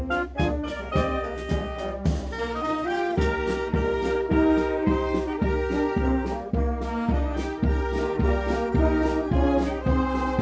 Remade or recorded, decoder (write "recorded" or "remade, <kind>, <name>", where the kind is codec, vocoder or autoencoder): recorded